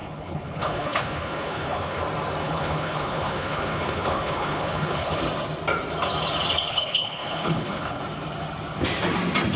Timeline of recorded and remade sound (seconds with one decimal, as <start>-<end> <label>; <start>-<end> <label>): 0.0-2.0 remade; 2.0-2.4 recorded; 2.4-5.2 remade; 5.2-6.7 recorded; 6.7-8.0 remade; 8.0-9.6 recorded

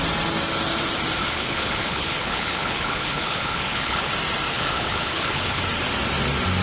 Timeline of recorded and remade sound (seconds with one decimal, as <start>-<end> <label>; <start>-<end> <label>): 0.0-1.2 recorded; 1.2-4.1 remade; 4.1-4.5 recorded; 4.5-5.6 remade; 5.6-6.6 recorded

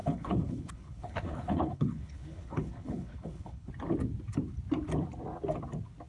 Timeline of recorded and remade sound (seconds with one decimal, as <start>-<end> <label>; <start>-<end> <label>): 0.0-3.7 remade; 3.7-6.1 recorded

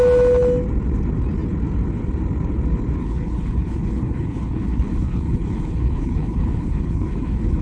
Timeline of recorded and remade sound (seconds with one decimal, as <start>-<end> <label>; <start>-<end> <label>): 0.0-3.0 recorded; 3.0-7.6 remade